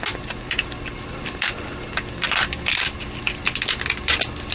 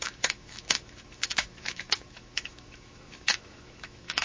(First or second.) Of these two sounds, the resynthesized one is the second